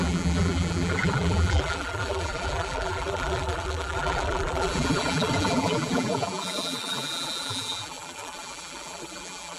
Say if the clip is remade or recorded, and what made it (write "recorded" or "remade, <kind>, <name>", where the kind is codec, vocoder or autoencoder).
remade, vocoder, BigVGAN v2